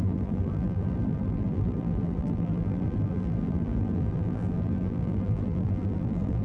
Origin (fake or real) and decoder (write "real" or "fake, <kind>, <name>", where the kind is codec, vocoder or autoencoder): fake, vocoder, BigVGAN v2